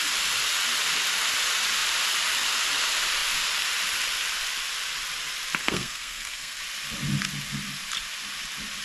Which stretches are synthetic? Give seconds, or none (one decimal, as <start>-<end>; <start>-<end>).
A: 5.6-6.6